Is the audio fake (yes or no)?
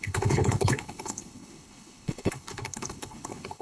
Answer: yes